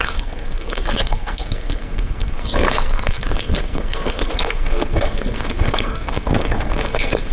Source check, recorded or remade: remade